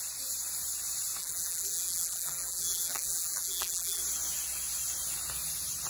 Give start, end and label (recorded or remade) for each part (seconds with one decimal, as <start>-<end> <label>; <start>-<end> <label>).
0.0-1.2 recorded; 1.2-4.0 remade; 4.0-5.9 recorded